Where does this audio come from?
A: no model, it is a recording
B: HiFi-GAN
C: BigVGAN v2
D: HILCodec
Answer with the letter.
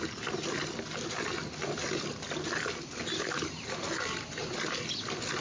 A